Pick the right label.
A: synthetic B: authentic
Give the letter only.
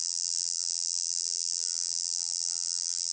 A